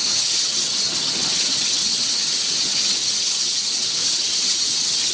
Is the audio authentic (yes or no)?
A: no